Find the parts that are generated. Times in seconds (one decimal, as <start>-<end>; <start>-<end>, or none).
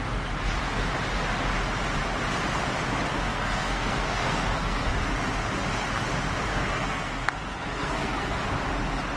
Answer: 3.1-4.8; 6.5-8.4